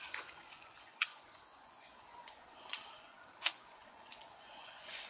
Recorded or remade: remade